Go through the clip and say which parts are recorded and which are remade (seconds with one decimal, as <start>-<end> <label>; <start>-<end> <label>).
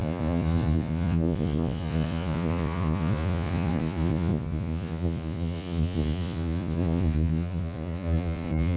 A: 0.0-8.8 remade